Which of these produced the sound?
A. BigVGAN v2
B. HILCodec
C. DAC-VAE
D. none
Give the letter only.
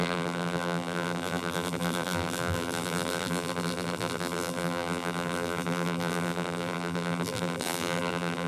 A